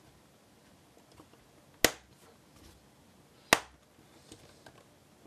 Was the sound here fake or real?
real